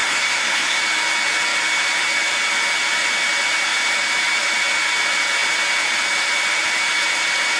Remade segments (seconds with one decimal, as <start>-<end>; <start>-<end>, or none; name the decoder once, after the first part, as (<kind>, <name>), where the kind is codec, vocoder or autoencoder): 0.0-0.8 (codec, SNAC)